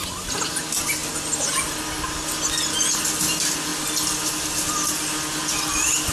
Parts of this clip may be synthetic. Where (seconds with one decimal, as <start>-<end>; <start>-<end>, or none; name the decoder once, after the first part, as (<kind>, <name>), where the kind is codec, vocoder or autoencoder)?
none